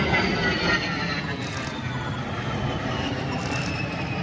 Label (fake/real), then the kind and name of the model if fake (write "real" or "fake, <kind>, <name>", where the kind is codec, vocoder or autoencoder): fake, vocoder, BigVGAN v2